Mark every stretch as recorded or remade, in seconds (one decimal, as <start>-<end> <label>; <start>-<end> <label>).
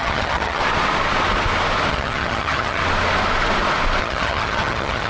0.0-0.6 remade; 0.6-1.9 recorded; 1.9-2.8 remade; 2.8-4.0 recorded; 4.0-5.1 remade